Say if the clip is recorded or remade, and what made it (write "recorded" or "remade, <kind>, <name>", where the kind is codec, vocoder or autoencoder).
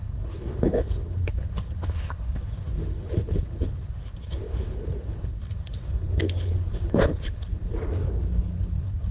remade, codec, HILCodec